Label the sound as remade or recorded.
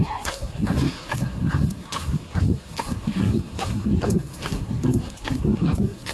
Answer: remade